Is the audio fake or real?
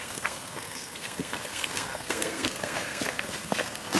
fake